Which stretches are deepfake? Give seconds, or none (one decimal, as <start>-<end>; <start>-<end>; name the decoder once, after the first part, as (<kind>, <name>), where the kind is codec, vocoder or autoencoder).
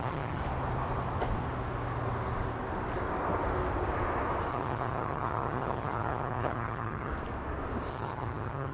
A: 0.0-0.4 (vocoder, HiFi-GAN); 4.5-7.1; 7.9-8.7